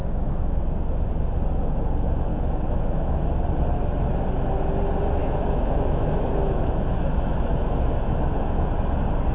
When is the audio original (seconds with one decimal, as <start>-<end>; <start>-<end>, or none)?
0.6-2.3; 3.2-5.2; 8.7-9.3